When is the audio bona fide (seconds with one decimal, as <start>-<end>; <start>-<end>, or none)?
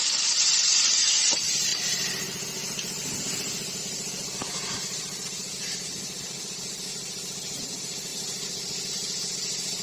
1.7-3.8; 6.9-7.6; 8.1-8.9